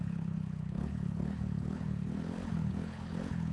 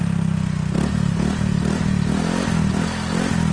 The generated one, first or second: first